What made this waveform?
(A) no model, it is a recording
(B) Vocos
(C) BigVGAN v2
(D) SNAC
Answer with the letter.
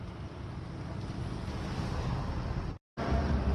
A